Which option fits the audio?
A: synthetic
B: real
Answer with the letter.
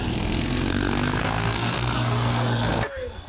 A